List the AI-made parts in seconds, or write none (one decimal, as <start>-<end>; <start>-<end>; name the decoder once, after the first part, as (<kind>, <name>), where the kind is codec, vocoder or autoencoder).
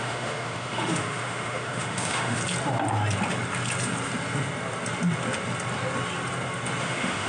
0.0-2.4 (autoencoder, DAC-VAE); 6.8-7.3